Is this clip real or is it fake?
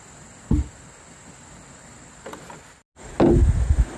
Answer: real